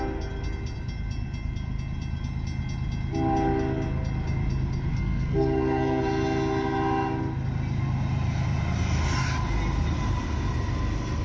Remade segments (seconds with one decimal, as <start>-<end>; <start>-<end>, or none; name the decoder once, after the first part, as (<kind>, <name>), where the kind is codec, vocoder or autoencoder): 4.9-6.0 (codec, SNAC)